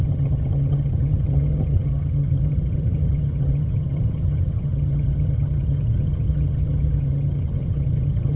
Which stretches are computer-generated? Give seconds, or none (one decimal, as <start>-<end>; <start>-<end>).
0.0-8.4